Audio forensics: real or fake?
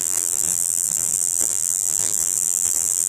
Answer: fake